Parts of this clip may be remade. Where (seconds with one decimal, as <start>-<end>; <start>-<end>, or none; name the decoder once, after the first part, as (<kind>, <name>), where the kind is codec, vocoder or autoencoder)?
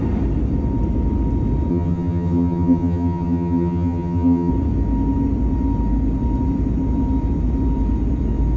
1.7-4.5 (vocoder, HiFi-GAN)